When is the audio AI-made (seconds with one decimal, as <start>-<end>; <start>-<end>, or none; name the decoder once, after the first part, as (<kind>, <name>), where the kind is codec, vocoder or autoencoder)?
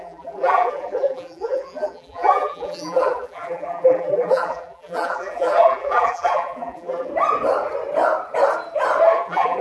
0.0-7.1 (vocoder, BigVGAN v2); 9.2-9.6